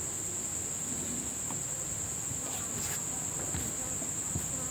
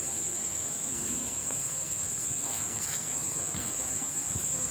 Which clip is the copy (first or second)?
second